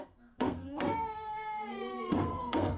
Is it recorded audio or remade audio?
remade